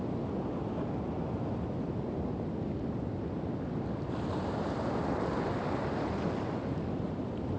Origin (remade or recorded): recorded